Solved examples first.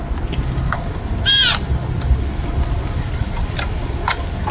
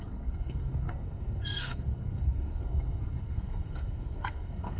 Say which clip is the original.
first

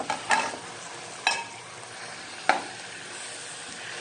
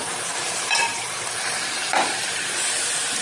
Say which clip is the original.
first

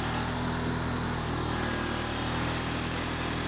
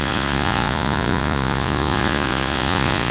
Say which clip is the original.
first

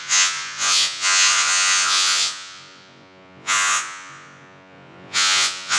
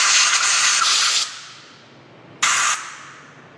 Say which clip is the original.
second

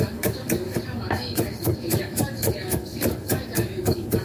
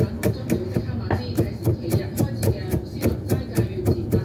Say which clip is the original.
second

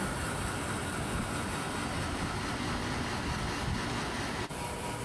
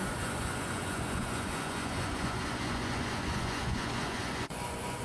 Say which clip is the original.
first